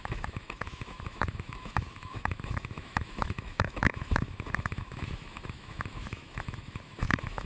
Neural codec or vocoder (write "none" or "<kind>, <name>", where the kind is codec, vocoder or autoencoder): autoencoder, DAC-VAE